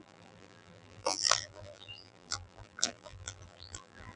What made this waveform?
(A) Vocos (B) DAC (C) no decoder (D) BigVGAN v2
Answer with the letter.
D